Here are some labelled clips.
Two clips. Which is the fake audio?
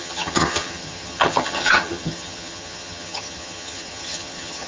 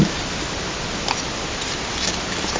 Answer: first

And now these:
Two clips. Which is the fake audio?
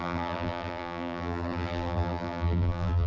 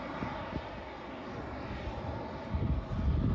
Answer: first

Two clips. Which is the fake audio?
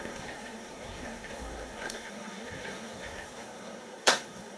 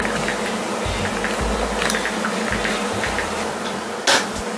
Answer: first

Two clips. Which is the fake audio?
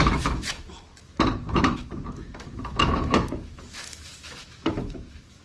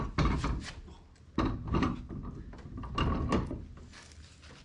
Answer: first